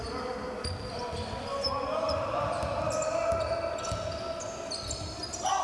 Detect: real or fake real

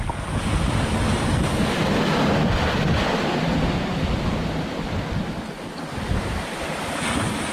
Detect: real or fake real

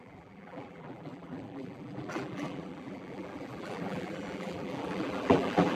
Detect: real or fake fake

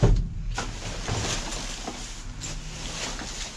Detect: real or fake real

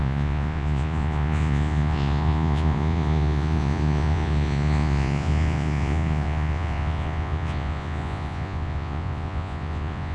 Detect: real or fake fake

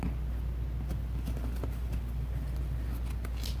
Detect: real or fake real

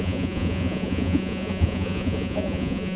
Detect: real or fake fake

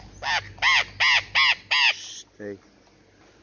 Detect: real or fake real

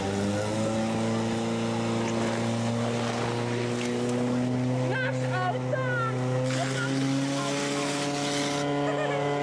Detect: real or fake real